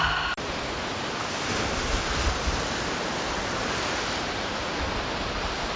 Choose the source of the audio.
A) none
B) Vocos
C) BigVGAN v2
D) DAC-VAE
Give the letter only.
A